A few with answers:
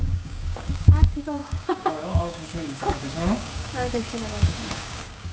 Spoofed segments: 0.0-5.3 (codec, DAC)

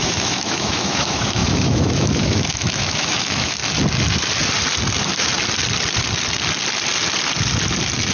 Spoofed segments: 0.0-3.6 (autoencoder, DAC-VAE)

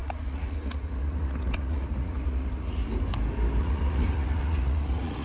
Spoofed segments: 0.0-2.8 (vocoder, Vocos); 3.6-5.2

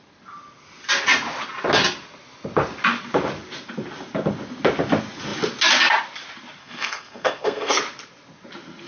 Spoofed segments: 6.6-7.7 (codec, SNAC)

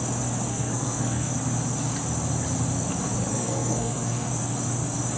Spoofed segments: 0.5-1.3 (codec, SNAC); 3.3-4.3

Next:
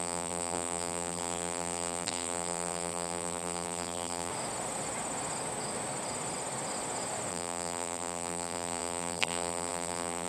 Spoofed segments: 0.0-4.3 (vocoder, BigVGAN v2); 7.3-10.3